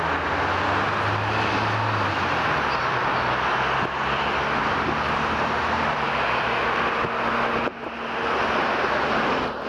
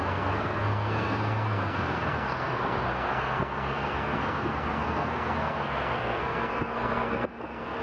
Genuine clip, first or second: first